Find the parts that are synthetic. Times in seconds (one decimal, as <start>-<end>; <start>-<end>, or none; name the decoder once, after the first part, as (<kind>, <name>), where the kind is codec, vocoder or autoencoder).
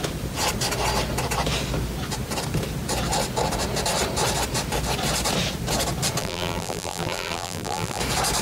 6.2-8.0 (vocoder, BigVGAN v2)